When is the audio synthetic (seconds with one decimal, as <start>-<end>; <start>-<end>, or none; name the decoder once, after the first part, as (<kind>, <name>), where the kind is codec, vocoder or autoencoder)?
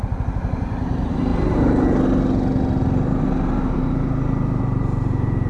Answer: 0.0-1.3 (vocoder, BigVGAN v2); 4.6-5.5